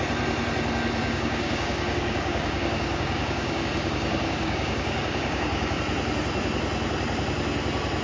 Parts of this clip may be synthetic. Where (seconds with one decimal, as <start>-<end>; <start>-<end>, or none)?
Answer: 1.0-5.8